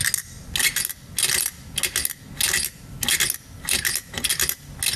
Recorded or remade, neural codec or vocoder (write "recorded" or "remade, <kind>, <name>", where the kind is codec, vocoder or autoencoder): recorded